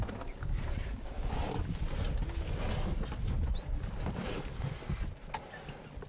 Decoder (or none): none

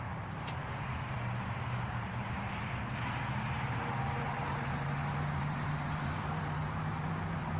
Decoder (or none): vocoder, BigVGAN v2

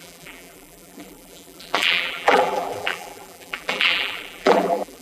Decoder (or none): vocoder, BigVGAN v2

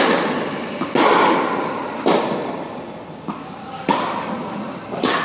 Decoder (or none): none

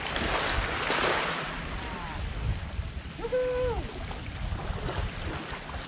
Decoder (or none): none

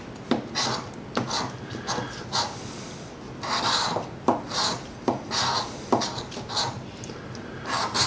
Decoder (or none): none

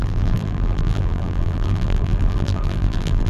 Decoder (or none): vocoder, BigVGAN v2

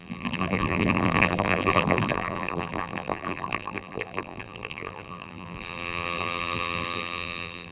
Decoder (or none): vocoder, BigVGAN v2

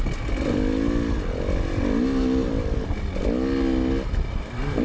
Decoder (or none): none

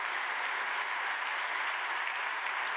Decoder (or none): none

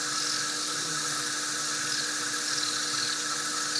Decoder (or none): none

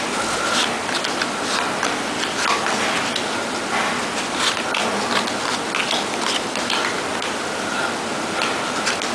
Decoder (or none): none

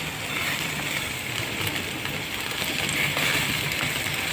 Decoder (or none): vocoder, BigVGAN v2